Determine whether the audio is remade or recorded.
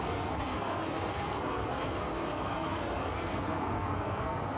remade